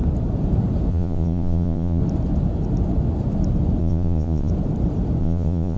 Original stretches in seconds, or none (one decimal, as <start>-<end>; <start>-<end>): 0.0-0.9; 2.0-3.8; 4.5-5.2